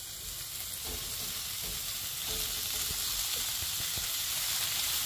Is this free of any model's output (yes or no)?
yes